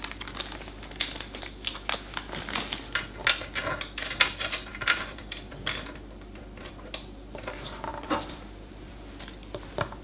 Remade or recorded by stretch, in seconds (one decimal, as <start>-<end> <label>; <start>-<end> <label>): 0.0-4.7 recorded; 4.7-6.7 remade; 6.7-7.9 recorded; 7.9-8.9 remade; 8.9-10.0 recorded